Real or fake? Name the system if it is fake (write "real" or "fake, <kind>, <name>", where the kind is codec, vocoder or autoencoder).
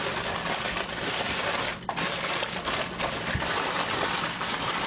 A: real